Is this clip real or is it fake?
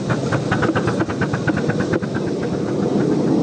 real